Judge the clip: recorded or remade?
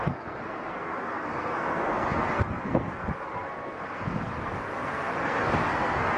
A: remade